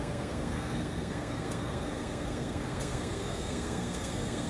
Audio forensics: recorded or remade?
remade